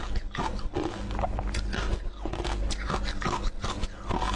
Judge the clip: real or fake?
real